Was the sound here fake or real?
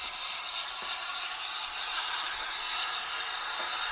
real